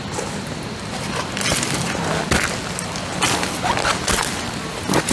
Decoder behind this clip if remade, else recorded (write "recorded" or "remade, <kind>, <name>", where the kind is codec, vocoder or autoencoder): recorded